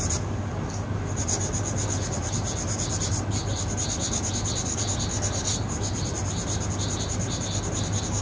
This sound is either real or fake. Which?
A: real